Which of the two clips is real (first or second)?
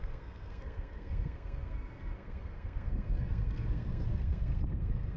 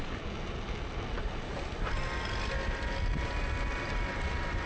second